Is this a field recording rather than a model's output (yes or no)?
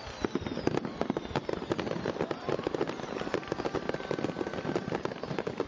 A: yes